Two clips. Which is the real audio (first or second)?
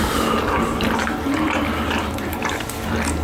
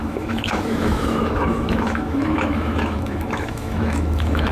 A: first